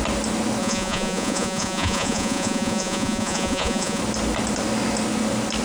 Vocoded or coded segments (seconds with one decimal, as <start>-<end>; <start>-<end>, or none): 0.6-4.0